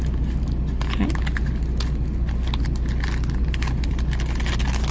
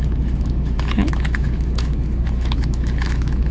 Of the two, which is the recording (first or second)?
first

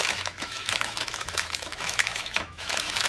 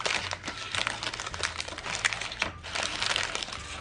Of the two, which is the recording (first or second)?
second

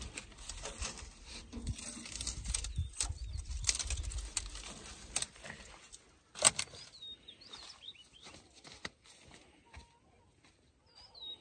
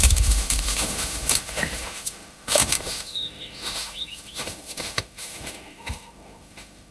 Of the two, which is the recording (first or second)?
first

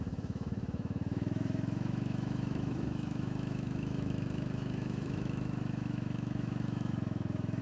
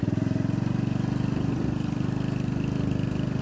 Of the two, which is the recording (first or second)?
second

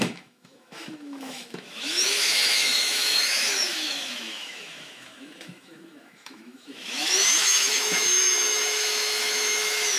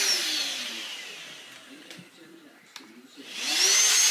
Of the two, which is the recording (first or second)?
second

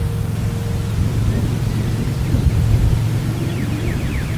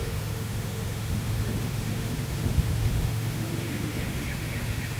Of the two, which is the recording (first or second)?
first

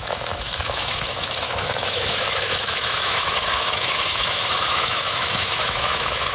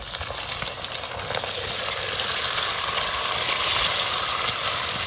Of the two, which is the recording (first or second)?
second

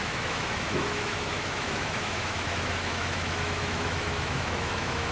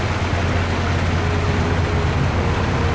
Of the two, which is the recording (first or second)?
second